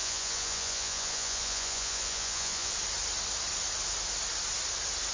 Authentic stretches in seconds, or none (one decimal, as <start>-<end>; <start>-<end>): 2.7-5.1